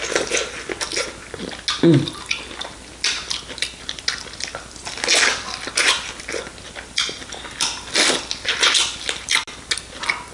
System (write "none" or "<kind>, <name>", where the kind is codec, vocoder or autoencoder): none